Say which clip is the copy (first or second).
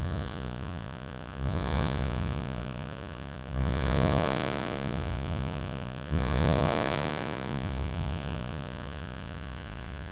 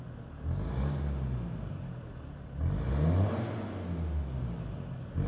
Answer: first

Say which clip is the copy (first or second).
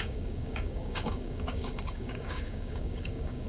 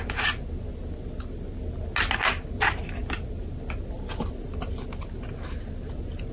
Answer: first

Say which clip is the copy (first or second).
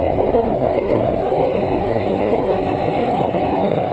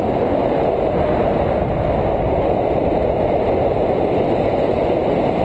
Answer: first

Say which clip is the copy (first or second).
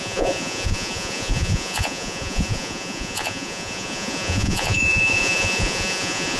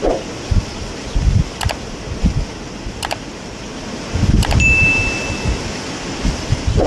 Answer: first